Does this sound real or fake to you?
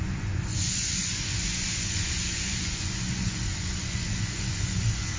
fake